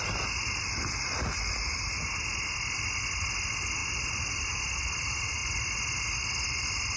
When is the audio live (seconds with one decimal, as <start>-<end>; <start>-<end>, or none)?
0.0-7.0

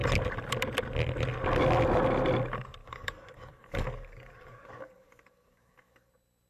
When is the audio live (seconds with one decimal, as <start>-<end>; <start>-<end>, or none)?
0.0-2.8; 6.1-6.5